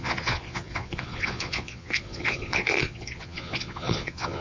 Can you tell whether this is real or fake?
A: fake